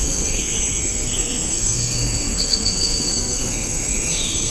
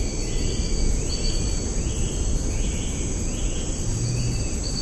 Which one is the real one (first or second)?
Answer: second